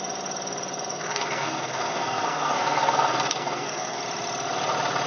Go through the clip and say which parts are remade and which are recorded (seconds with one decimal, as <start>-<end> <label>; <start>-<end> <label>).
0.0-0.9 recorded; 0.9-4.0 remade; 4.0-5.1 recorded